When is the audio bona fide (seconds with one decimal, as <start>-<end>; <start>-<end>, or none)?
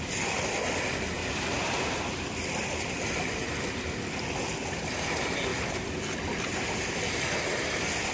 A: 0.0-1.2; 2.9-8.1